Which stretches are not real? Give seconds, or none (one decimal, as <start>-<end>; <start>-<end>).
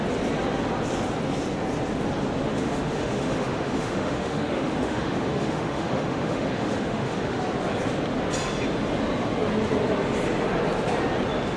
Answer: 2.5-7.4